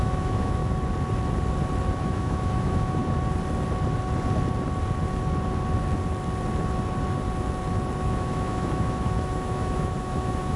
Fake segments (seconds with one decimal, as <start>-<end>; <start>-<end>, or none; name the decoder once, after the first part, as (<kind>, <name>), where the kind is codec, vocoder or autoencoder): 0.0-0.6 (autoencoder, DAC-VAE); 2.0-3.0; 8.1-10.6